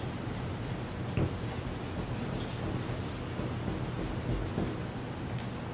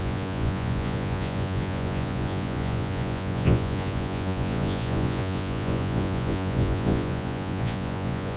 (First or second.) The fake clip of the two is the second